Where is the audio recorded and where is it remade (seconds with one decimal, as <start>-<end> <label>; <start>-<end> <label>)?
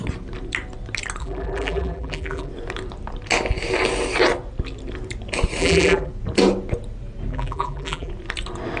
0.0-1.2 recorded; 1.2-2.5 remade; 2.5-5.6 recorded; 5.6-6.1 remade; 6.1-7.3 recorded; 7.3-8.1 remade; 8.1-8.8 recorded